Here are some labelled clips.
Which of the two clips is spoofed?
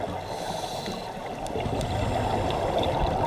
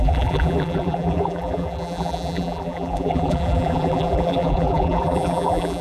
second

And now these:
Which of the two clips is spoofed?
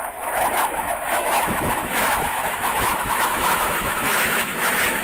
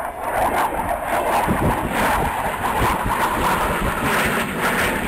first